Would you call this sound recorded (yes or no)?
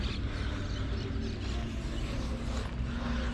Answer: yes